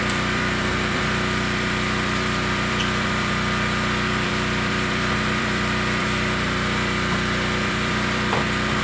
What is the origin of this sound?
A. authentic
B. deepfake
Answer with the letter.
B